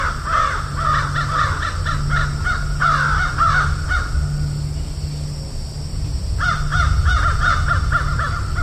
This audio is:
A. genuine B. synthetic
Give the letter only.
A